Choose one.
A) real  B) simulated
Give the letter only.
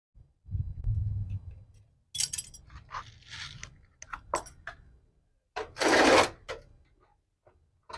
A